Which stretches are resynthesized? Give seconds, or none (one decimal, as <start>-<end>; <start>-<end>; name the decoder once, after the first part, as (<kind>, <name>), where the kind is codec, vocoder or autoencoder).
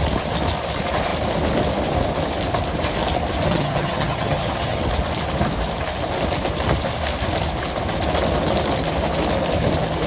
3.5-4.8 (vocoder, HiFi-GAN)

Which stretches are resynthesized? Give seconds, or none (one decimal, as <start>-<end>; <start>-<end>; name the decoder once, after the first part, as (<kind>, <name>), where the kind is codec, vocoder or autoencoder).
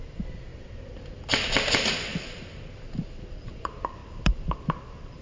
0.0-0.5 (vocoder, BigVGAN v2); 3.6-5.2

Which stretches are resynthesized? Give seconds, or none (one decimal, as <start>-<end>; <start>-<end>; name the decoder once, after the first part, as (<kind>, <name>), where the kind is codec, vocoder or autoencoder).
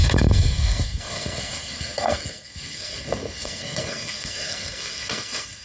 0.0-5.6 (codec, SNAC)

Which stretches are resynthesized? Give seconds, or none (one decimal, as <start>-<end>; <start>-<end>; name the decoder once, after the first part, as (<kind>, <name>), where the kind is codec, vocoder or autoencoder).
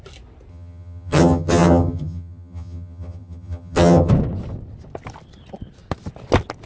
0.5-4.1 (vocoder, HiFi-GAN)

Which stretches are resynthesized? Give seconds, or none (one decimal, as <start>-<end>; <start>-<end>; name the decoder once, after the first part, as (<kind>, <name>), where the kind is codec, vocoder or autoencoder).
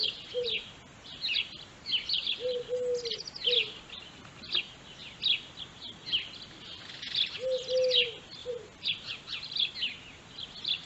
8.4-9.7 (vocoder, BigVGAN v2)